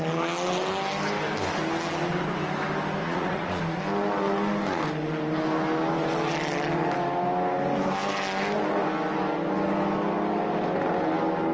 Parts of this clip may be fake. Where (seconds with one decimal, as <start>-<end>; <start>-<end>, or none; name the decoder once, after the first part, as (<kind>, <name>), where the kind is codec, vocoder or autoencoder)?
3.0-3.8 (vocoder, Vocos)